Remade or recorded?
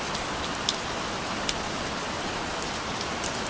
recorded